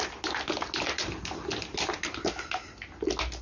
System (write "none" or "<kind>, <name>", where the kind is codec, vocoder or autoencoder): none